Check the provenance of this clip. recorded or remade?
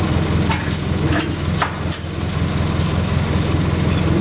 recorded